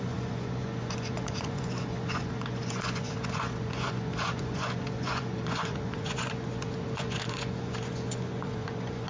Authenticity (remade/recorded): remade